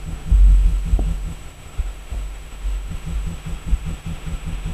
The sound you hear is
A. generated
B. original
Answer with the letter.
A